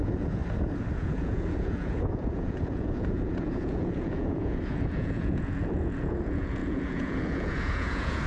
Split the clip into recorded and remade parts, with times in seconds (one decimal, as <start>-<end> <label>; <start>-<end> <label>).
0.0-0.4 remade; 0.4-1.0 recorded; 1.0-8.3 remade